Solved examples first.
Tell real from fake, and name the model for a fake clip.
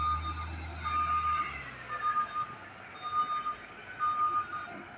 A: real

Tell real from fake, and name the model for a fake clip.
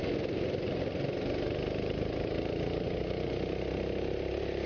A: real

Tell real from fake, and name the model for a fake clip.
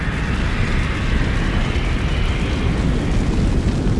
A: real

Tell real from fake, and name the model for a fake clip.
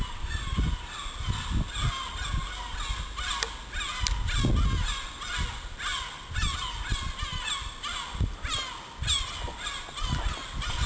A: real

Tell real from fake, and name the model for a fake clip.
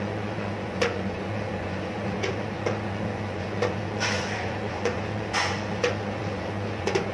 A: fake, vocoder, Vocos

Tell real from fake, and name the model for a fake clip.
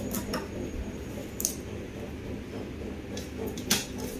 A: real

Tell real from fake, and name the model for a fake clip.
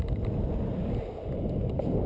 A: real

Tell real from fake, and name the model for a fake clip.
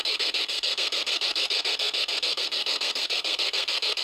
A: fake, codec, SNAC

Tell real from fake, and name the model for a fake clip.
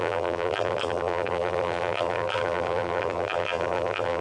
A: fake, vocoder, BigVGAN v2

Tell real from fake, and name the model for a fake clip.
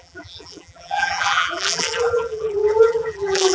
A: fake, vocoder, BigVGAN v2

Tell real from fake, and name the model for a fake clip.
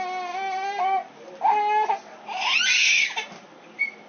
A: real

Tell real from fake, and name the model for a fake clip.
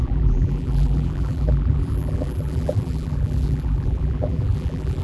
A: fake, vocoder, BigVGAN v2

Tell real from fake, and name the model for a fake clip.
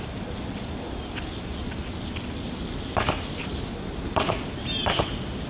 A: real